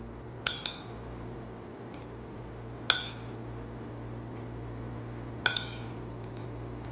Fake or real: real